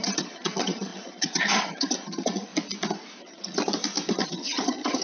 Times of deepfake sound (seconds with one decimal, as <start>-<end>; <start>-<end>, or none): 0.0-2.5; 3.2-3.6; 4.1-5.0